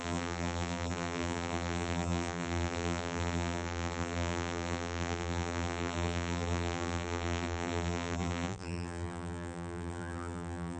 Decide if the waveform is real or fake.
fake